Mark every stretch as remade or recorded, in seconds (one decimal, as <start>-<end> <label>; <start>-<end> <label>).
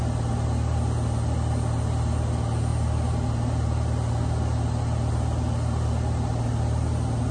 0.0-7.3 recorded